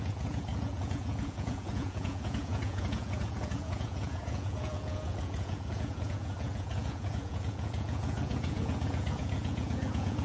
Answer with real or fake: fake